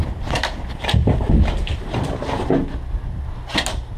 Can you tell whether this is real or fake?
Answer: real